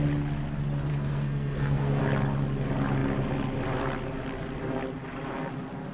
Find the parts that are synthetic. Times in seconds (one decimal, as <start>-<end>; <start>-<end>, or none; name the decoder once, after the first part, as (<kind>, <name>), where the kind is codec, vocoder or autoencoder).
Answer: 0.9-2.0 (codec, SNAC)

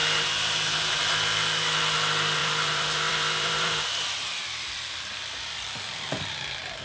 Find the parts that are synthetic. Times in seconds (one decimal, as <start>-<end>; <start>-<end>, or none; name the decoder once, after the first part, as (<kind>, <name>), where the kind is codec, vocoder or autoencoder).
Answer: 2.4-6.2 (vocoder, BigVGAN v2)